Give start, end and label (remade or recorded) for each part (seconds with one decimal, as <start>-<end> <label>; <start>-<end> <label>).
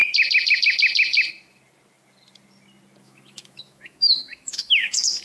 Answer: 0.0-3.0 recorded; 3.0-5.2 remade